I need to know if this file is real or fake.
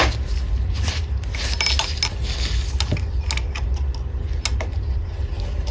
real